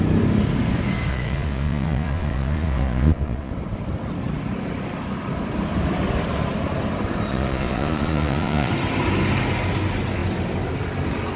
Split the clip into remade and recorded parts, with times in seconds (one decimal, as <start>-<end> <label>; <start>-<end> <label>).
0.0-1.1 recorded; 1.1-3.5 remade; 3.5-7.3 recorded; 7.3-8.7 remade; 8.7-11.4 recorded